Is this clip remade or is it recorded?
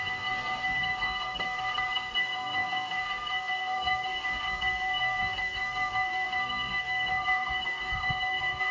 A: remade